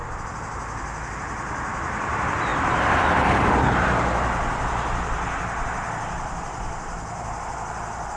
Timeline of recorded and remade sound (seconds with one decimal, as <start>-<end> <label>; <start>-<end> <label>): 0.0-8.2 recorded